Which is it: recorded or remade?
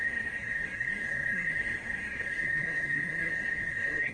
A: remade